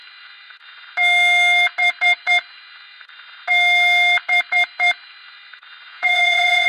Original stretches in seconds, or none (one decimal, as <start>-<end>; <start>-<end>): 0.0-5.9